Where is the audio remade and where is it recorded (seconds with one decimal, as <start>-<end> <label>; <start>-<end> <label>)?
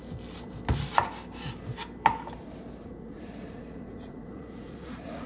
0.0-2.8 recorded; 2.8-5.3 remade